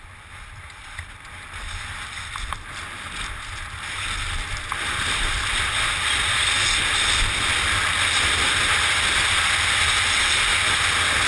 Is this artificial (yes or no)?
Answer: no